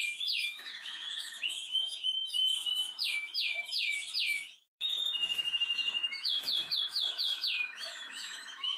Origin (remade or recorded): remade